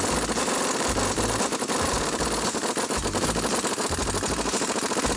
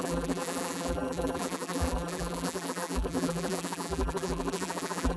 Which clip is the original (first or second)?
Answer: first